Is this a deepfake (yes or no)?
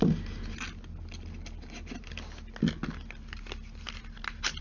no